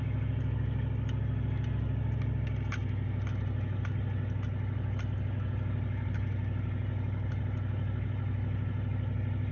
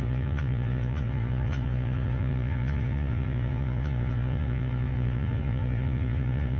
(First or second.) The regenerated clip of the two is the second